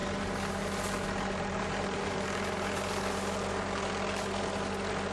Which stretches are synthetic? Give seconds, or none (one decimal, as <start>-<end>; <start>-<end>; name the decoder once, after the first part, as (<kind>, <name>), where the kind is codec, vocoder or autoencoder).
none